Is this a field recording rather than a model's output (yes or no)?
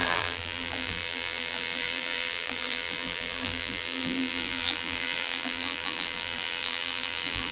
no